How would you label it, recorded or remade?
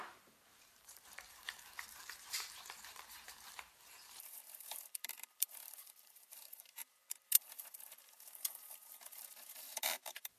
remade